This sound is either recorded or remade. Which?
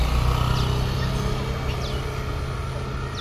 recorded